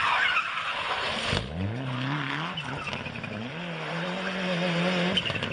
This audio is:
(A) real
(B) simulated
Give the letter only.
A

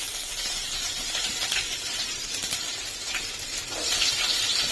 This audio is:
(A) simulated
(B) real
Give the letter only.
A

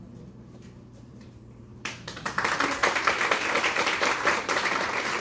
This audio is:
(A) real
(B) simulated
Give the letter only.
B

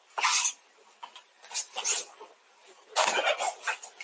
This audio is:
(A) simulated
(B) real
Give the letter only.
B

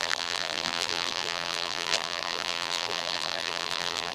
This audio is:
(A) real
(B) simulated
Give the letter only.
B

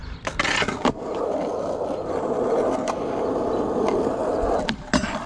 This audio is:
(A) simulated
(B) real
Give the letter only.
B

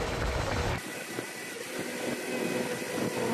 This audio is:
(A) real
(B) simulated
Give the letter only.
A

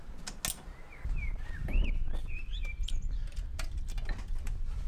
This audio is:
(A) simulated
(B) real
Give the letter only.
B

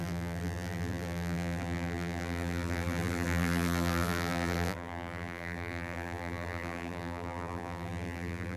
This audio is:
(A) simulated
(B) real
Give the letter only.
A